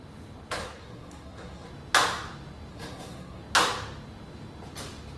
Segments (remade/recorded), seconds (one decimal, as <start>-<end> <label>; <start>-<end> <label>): 0.0-0.6 recorded; 0.6-1.7 remade; 1.7-2.7 recorded; 2.7-3.4 remade; 3.4-5.2 recorded